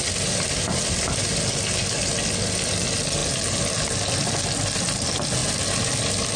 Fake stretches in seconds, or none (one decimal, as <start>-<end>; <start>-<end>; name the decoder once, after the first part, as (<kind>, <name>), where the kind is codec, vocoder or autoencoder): 3.2-4.8 (vocoder, BigVGAN v2); 5.4-6.0